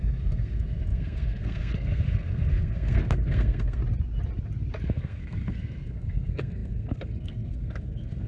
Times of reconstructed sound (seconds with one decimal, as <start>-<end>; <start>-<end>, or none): 0.0-3.8; 4.8-8.3